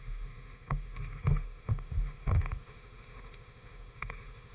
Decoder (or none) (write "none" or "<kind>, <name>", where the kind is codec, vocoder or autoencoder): autoencoder, DAC-VAE